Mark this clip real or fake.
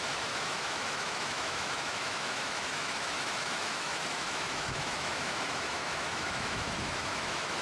fake